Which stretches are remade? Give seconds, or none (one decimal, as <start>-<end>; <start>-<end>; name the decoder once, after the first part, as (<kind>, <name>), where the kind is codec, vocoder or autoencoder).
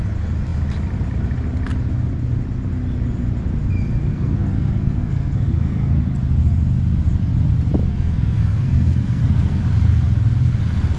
4.1-6.0 (codec, SNAC); 7.9-9.6